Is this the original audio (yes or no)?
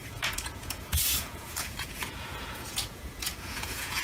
no